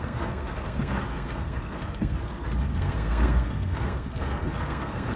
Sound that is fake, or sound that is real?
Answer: fake